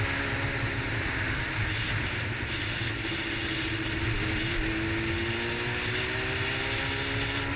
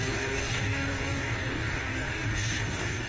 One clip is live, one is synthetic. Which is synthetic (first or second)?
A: second